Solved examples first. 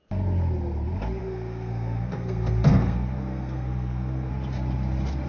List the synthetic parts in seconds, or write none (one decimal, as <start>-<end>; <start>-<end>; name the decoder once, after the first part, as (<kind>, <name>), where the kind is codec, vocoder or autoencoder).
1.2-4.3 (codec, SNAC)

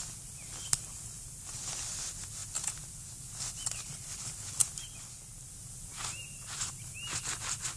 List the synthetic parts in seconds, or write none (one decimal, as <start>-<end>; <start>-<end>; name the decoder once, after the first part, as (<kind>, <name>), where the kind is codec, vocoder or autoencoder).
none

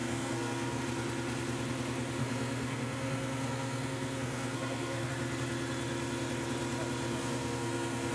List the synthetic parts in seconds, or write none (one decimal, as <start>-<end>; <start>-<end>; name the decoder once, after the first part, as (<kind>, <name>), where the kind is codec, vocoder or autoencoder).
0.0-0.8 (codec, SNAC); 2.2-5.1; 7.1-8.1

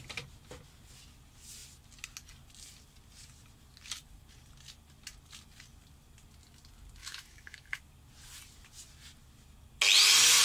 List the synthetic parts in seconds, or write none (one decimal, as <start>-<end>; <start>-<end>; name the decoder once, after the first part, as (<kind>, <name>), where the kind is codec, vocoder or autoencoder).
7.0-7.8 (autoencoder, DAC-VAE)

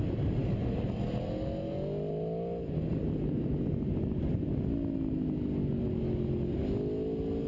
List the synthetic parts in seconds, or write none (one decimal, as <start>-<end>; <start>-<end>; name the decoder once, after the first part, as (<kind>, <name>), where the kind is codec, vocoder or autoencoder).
none